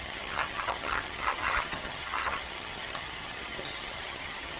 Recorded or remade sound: remade